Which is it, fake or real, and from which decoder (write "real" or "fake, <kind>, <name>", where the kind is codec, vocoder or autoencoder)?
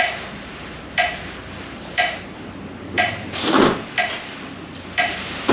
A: real